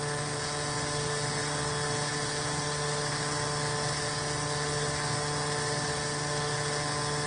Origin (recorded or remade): recorded